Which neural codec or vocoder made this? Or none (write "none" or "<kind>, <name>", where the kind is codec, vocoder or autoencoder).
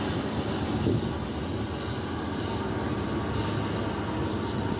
none